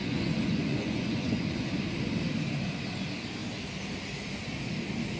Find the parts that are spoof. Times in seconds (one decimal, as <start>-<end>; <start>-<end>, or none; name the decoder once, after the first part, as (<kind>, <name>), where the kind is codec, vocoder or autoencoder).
0.0-1.7 (vocoder, Vocos)